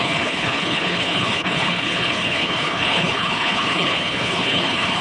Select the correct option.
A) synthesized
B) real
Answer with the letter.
A